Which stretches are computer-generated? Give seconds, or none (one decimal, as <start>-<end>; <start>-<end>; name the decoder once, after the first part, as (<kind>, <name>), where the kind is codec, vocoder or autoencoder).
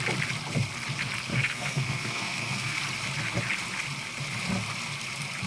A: 1.3-2.8 (codec, SNAC)